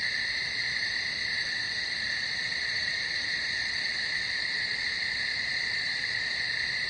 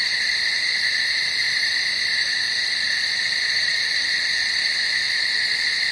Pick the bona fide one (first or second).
first